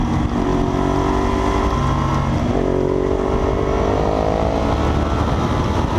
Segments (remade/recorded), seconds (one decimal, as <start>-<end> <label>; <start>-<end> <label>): 0.0-6.0 recorded